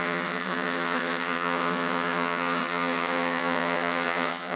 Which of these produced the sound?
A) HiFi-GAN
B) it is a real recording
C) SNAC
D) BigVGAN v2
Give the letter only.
A